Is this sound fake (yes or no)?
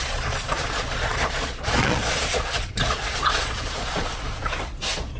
yes